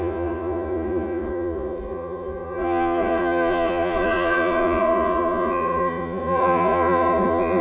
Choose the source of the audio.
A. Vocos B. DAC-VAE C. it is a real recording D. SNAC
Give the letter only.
A